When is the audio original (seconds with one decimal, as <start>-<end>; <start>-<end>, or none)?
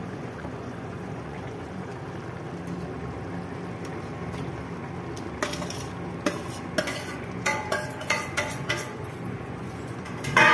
1.9-6.8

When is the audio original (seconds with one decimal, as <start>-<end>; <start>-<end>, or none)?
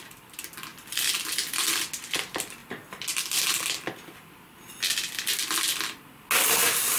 0.0-0.7; 1.7-7.0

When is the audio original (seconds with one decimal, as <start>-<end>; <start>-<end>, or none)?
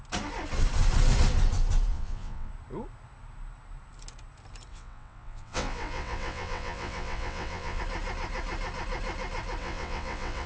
0.0-1.9; 2.5-4.7; 7.8-9.6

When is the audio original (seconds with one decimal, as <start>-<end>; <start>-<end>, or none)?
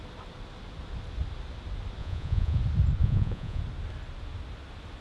0.0-2.0; 2.6-3.0; 3.6-5.0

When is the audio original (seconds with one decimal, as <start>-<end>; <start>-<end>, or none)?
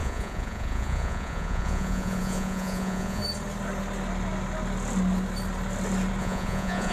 3.2-6.2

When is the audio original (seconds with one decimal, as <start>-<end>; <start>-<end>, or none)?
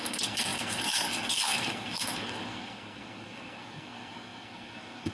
none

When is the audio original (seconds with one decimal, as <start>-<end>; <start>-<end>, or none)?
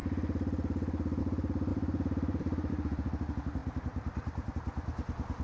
0.0-1.7; 2.7-3.6; 4.5-5.4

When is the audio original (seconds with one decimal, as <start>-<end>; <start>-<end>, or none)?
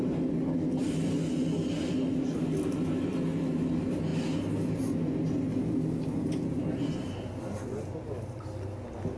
0.0-9.2